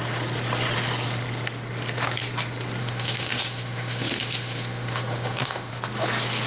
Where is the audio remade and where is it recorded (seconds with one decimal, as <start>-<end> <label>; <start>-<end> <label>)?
0.0-2.8 recorded; 2.8-5.7 remade; 5.7-6.5 recorded